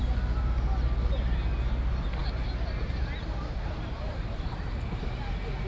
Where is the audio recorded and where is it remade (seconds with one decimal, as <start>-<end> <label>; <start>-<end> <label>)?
0.0-5.7 recorded